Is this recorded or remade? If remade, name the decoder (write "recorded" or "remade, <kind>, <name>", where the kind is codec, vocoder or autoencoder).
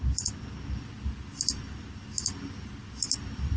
recorded